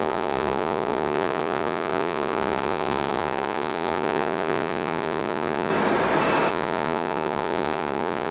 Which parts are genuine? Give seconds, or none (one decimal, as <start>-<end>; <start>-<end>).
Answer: 5.7-6.5